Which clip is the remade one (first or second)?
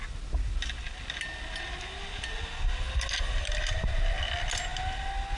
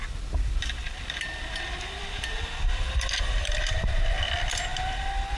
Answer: second